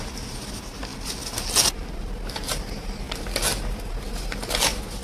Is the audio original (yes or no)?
yes